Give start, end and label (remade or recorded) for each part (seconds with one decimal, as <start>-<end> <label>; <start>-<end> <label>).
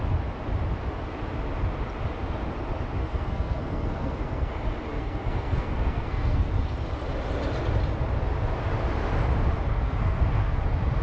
0.0-3.0 recorded; 3.0-4.5 remade; 4.5-4.9 recorded; 4.9-6.5 remade; 6.5-9.7 recorded; 9.7-10.6 remade; 10.6-11.0 recorded